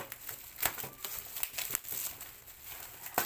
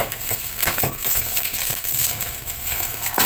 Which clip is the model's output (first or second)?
second